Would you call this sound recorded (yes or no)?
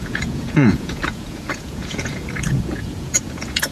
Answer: no